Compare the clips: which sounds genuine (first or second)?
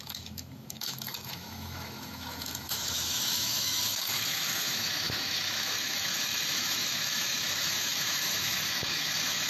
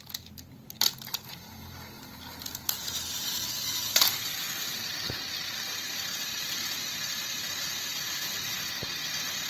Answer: second